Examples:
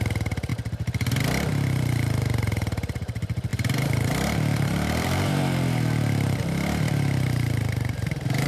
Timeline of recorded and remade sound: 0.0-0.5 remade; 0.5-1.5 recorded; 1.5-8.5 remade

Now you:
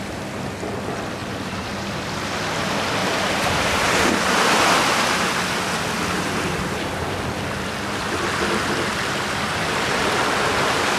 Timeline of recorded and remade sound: 0.0-1.2 recorded; 1.2-2.0 remade; 2.0-11.0 recorded

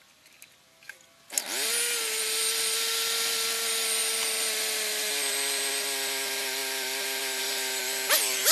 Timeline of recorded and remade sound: 0.0-8.5 recorded

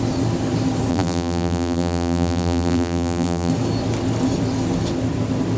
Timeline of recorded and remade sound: 0.0-0.9 recorded; 0.9-3.5 remade; 3.5-5.6 recorded

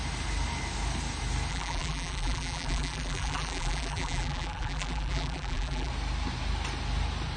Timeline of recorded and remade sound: 0.0-1.5 recorded; 1.5-5.9 remade; 5.9-7.4 recorded

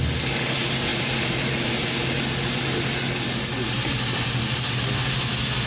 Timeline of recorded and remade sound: 0.0-0.9 recorded; 0.9-2.2 remade; 2.2-5.7 recorded